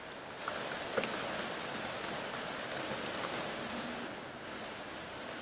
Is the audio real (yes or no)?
yes